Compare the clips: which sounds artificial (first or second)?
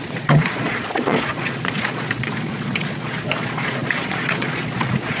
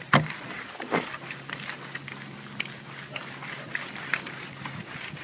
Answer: first